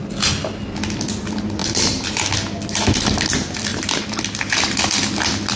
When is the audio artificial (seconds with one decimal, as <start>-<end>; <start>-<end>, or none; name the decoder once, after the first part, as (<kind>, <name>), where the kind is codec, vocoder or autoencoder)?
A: 1.6-2.2 (vocoder, BigVGAN v2); 3.7-4.8